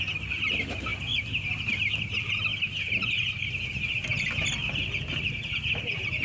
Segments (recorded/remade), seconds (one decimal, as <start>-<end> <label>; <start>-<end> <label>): 0.0-0.9 recorded; 0.9-1.8 remade; 1.8-6.2 recorded